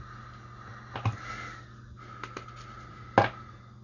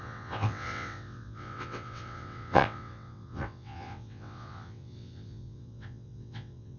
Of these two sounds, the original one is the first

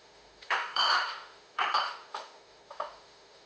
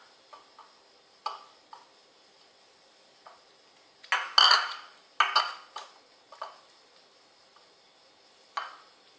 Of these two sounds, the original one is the second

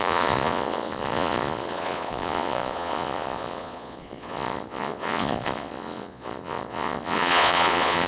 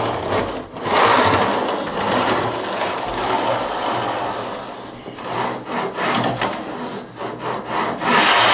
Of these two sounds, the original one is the second